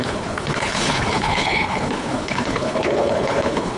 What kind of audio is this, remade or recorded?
remade